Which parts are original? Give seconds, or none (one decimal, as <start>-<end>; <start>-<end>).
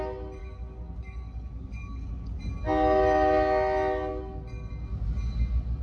0.0-0.4; 2.4-5.8